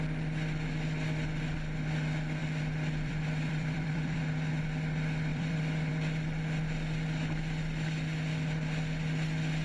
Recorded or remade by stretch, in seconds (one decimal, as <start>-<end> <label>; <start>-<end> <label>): 0.0-2.4 recorded; 2.4-4.2 remade; 4.2-5.3 recorded; 5.3-5.9 remade; 5.9-9.6 recorded